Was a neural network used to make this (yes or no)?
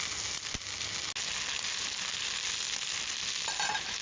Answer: no